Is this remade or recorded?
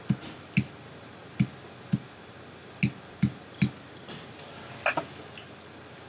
recorded